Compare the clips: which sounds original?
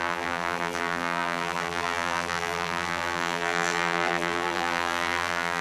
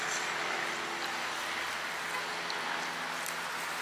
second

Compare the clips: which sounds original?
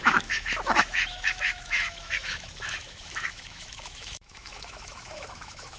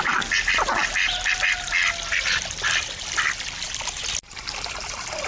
second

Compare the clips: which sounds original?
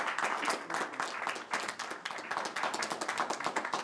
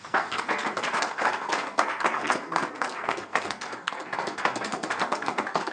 first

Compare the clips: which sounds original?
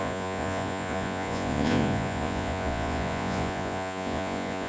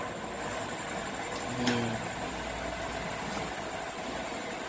second